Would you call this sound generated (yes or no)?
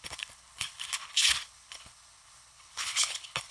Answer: yes